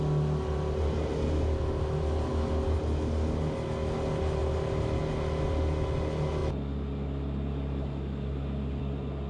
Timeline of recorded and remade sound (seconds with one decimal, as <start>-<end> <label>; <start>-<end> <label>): 0.0-9.3 recorded